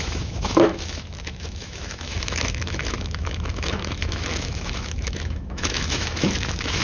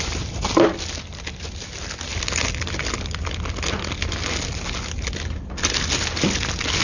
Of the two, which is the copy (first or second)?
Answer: first